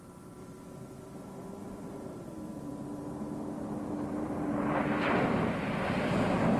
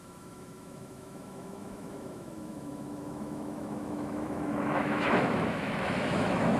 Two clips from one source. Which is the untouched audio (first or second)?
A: first